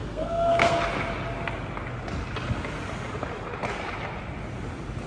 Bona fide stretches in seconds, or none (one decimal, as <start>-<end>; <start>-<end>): 0.8-5.1